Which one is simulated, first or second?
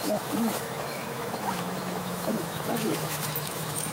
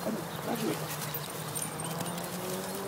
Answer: first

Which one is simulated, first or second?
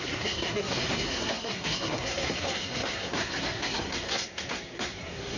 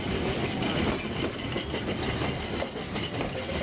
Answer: first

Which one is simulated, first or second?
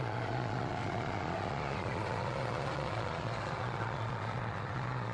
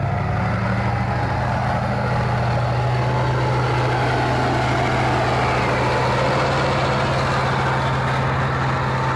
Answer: first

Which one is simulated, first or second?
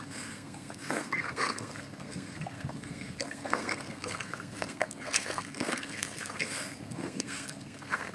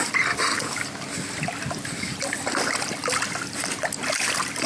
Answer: first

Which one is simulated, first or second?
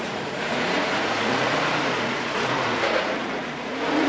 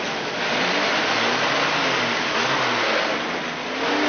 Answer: first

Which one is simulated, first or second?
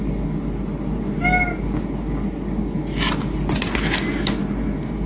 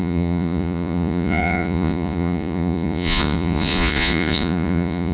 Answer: second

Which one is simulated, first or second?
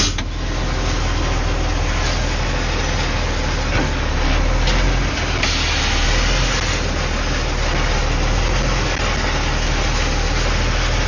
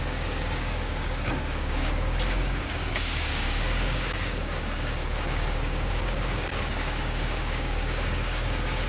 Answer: second